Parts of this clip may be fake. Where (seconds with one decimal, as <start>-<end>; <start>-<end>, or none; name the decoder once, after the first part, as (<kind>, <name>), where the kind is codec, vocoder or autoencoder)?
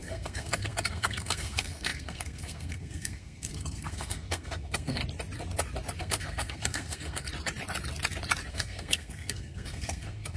0.0-5.0 (codec, SNAC); 6.0-7.3; 8.5-10.4